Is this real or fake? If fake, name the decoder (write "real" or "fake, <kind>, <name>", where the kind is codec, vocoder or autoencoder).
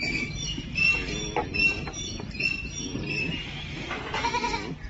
real